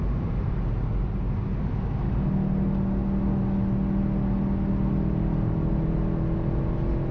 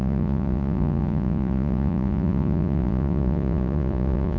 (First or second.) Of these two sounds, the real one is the first